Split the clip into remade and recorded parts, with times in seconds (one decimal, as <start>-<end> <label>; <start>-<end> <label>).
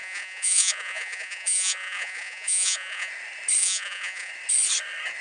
0.0-3.1 remade; 3.1-3.6 recorded; 3.6-4.3 remade; 4.3-5.2 recorded